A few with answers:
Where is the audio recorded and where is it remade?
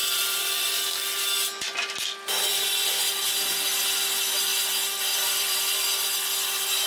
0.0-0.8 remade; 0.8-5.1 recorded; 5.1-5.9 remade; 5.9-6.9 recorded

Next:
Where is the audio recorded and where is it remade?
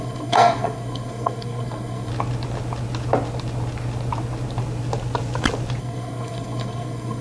0.0-2.1 remade; 2.1-5.8 recorded; 5.8-7.2 remade